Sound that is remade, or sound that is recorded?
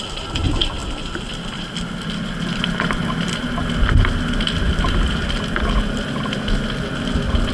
recorded